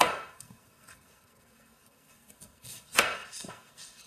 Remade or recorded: remade